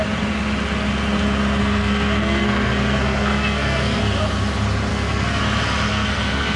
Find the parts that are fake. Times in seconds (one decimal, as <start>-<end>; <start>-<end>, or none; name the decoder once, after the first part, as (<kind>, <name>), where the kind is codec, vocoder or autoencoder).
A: 1.6-4.0 (codec, SNAC); 4.9-5.4; 5.9-6.6